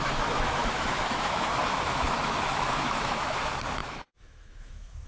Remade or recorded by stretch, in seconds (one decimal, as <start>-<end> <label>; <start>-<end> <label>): 0.0-5.1 remade